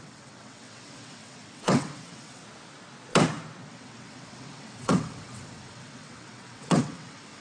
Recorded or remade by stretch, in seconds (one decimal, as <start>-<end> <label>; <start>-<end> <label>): 0.0-2.4 remade; 2.4-3.7 recorded; 3.7-7.4 remade